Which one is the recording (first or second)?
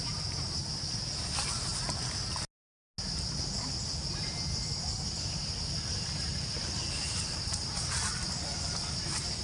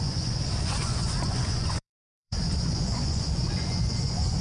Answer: first